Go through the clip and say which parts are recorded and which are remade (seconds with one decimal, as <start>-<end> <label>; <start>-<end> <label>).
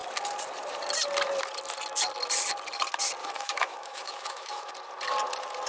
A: 0.0-3.2 recorded; 3.2-4.7 remade; 4.7-5.7 recorded